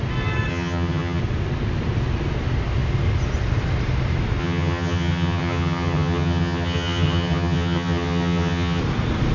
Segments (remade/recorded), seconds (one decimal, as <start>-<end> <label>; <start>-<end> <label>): 0.0-0.5 recorded; 0.5-1.2 remade; 1.2-4.4 recorded; 4.4-8.8 remade; 8.8-9.3 recorded